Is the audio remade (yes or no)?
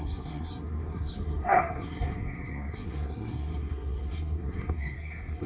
yes